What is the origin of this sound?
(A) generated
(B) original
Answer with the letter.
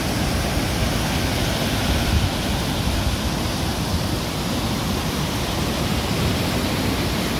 B